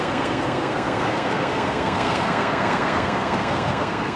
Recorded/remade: remade